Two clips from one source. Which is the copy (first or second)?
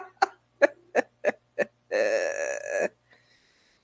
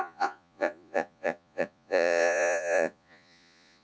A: second